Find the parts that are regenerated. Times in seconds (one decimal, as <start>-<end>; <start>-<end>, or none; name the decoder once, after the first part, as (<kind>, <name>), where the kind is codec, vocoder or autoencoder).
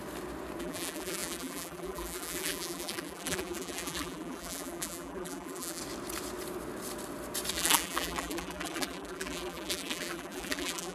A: 0.6-5.8 (vocoder, BigVGAN v2); 7.5-10.9